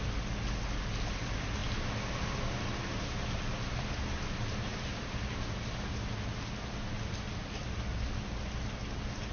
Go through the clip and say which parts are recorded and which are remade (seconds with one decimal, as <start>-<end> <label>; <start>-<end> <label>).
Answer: 0.0-9.3 recorded